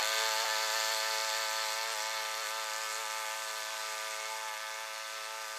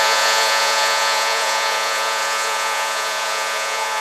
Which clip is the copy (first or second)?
second